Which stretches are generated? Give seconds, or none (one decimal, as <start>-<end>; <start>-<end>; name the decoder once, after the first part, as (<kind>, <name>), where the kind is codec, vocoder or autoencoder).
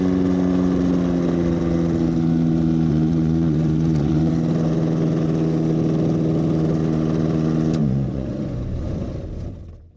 2.9-4.3 (vocoder, Vocos); 7.8-9.1